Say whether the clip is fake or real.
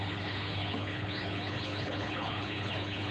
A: fake